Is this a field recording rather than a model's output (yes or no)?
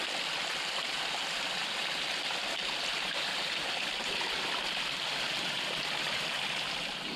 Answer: yes